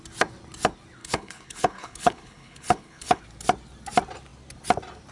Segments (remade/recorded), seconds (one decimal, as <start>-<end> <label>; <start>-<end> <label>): 0.0-1.0 recorded; 1.0-3.2 remade; 3.2-5.1 recorded